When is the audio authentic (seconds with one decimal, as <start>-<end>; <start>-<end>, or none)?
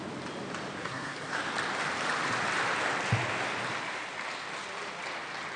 0.0-0.8; 1.4-5.6